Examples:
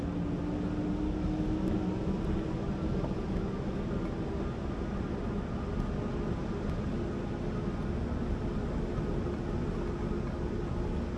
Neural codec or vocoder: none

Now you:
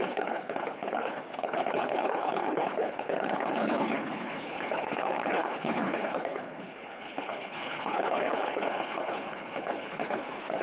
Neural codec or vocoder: codec, HILCodec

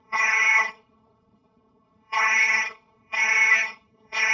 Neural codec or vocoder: codec, HILCodec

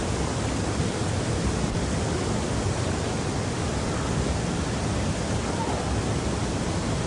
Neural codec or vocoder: none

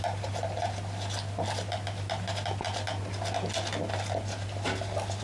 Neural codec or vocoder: none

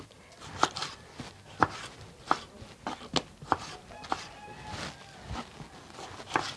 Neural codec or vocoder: none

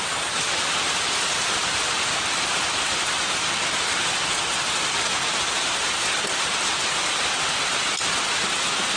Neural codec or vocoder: none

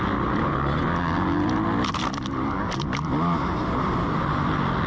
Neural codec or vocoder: none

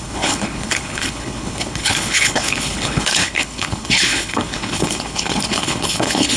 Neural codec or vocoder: codec, HILCodec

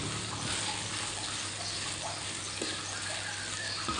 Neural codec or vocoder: none